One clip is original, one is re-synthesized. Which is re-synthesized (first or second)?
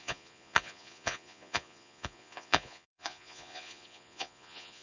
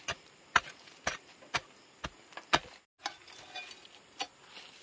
first